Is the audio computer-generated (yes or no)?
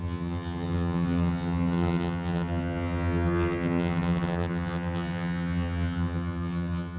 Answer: yes